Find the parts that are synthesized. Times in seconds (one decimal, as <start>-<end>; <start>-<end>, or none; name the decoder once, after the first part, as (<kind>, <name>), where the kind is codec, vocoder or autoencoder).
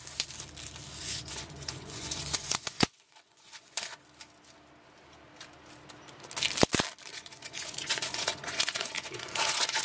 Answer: 1.0-4.0 (vocoder, Vocos); 7.1-9.8